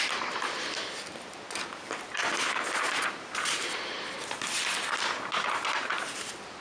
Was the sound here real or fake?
fake